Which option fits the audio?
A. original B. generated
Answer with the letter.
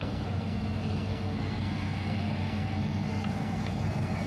B